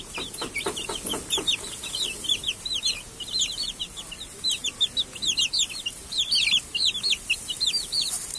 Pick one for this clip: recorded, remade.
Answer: recorded